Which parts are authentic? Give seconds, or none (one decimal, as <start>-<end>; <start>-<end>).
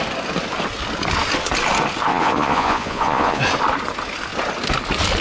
0.0-2.1; 3.4-5.2